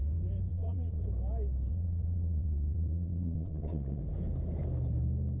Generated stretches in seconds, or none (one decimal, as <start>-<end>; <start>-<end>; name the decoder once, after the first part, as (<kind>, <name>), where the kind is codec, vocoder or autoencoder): 0.5-1.0 (vocoder, Vocos); 1.7-4.0